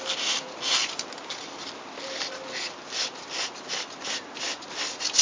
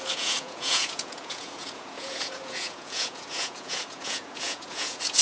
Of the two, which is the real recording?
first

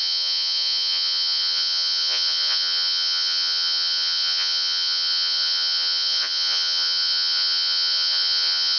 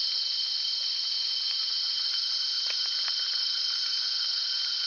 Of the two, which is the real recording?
second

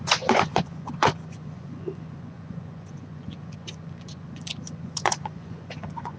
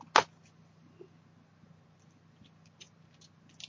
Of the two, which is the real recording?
second